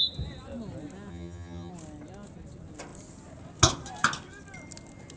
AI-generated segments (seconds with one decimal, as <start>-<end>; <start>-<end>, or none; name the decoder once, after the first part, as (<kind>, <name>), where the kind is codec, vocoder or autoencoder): 1.1-1.7 (vocoder, HiFi-GAN)